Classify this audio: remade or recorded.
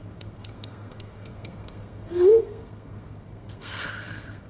remade